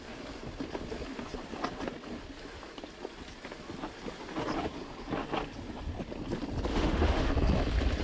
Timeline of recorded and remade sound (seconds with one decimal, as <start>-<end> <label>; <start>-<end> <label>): 0.0-6.7 recorded; 6.7-7.3 remade; 7.3-8.0 recorded